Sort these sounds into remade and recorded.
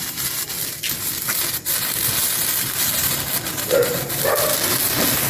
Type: recorded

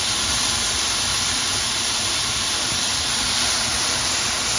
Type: recorded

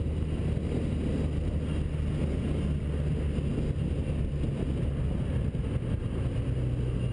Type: recorded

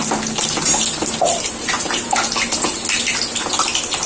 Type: recorded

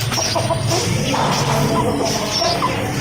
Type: recorded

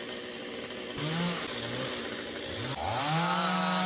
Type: recorded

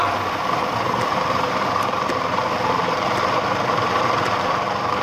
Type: remade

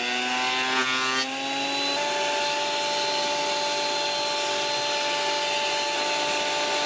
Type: recorded